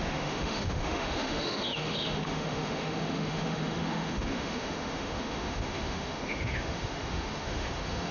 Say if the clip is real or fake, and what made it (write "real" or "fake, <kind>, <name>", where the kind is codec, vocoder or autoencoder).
fake, autoencoder, DAC-VAE